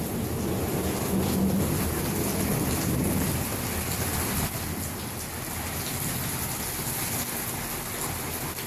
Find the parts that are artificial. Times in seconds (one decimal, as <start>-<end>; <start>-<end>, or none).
none